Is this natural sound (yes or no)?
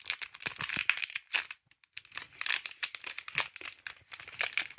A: no